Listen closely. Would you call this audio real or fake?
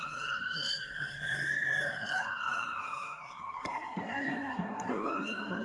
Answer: fake